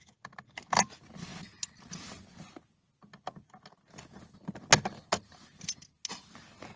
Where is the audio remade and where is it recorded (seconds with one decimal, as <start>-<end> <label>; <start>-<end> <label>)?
0.0-6.8 recorded